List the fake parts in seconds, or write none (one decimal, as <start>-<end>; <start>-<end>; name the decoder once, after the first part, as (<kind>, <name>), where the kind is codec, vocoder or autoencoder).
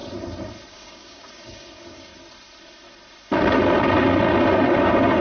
0.7-2.1 (codec, DAC)